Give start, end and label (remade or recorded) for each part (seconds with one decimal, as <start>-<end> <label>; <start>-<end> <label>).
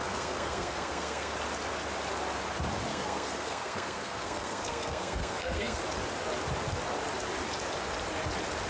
0.0-1.3 remade; 1.3-2.9 recorded; 2.9-5.8 remade; 5.8-8.7 recorded